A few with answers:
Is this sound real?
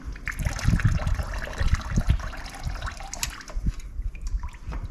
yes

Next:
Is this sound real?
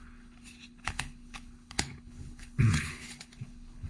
no